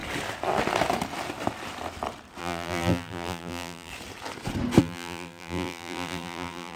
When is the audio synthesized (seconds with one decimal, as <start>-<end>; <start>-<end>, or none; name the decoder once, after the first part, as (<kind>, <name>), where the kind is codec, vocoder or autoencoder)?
2.4-3.9 (vocoder, BigVGAN v2); 4.8-6.8